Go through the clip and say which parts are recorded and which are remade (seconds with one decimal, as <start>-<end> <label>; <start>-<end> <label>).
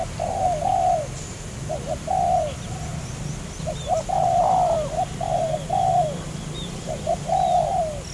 0.0-2.9 recorded; 2.9-5.7 remade; 5.7-8.1 recorded